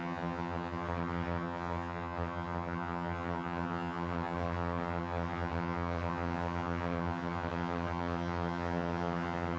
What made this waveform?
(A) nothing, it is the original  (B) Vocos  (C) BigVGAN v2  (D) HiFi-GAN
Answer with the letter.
D